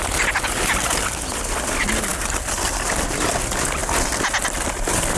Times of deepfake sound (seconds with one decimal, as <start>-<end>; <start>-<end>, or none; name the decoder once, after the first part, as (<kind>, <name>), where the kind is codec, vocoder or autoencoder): 2.1-3.2 (vocoder, BigVGAN v2)